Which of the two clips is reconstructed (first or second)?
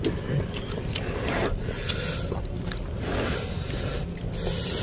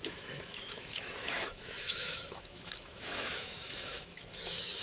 second